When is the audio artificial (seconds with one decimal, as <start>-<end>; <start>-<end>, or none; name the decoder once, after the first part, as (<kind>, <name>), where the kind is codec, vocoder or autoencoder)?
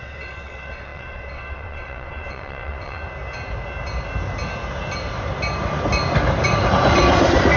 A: 0.0-3.0 (vocoder, WaveNeXt)